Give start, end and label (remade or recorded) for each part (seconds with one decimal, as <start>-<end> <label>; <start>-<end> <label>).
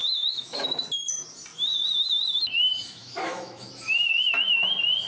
0.0-0.8 remade; 0.8-3.0 recorded; 3.0-3.7 remade; 3.7-5.1 recorded